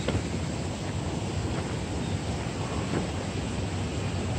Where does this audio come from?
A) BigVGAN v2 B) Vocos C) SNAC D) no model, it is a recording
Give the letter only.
D